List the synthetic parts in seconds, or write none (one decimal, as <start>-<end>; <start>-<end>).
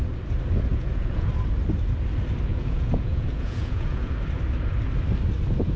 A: 0.7-1.3; 2.5-4.2